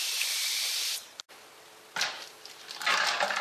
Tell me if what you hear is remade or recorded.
recorded